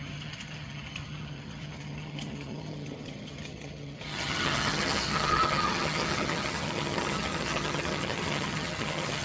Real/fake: fake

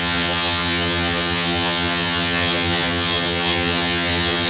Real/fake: fake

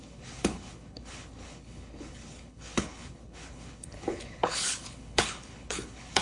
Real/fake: fake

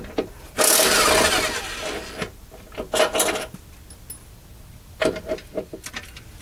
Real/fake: real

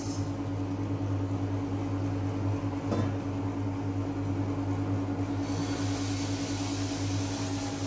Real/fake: real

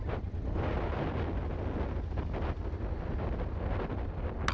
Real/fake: real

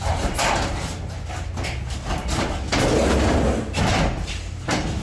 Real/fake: real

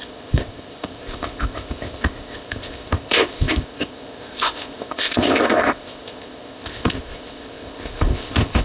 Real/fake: fake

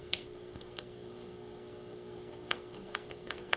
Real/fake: fake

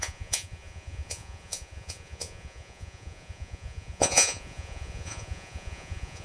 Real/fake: fake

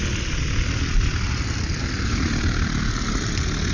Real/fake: real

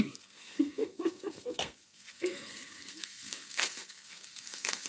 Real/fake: fake